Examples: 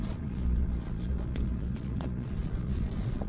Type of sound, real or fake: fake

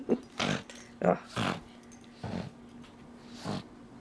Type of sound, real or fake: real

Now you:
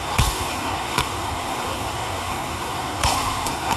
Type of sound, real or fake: fake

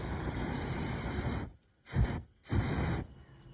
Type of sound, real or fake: real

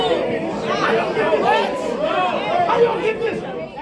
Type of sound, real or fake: real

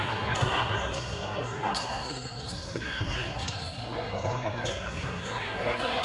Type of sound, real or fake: fake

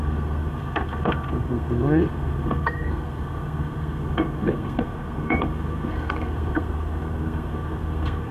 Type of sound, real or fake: fake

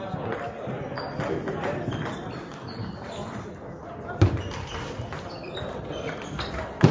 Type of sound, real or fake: real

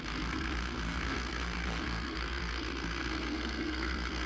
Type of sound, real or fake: fake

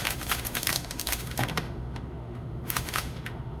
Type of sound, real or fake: fake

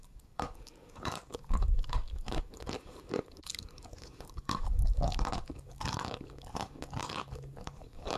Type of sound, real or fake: fake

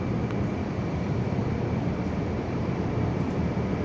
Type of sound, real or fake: fake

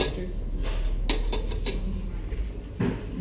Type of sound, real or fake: real